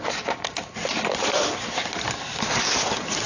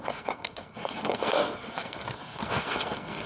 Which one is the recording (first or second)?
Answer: first